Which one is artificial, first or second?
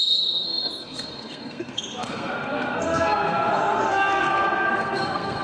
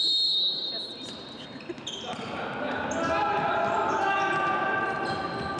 first